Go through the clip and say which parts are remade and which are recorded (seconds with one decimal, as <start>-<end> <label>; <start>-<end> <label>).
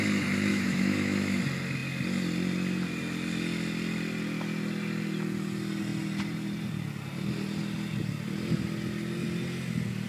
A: 0.0-0.5 recorded; 0.5-1.4 remade; 1.4-10.1 recorded